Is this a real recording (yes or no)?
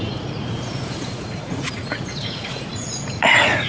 no